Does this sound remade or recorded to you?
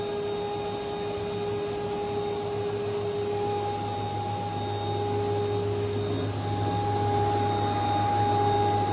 recorded